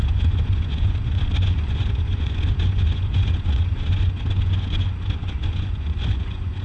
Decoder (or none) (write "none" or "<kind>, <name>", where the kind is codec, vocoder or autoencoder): vocoder, Vocos